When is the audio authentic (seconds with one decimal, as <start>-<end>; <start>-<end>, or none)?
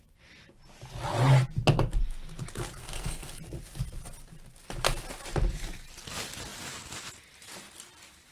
0.0-2.8; 3.4-8.3